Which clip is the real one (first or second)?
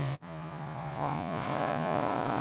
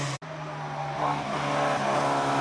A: second